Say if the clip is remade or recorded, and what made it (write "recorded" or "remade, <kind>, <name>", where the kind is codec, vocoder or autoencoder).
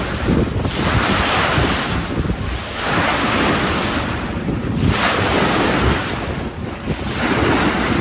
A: recorded